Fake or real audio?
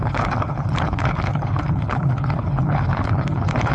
fake